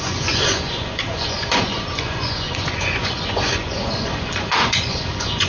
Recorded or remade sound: remade